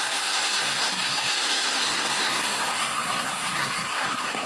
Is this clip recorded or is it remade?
remade